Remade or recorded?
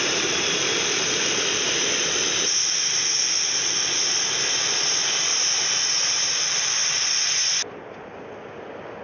recorded